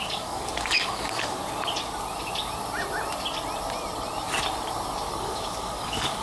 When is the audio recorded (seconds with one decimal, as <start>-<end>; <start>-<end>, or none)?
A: 1.4-5.1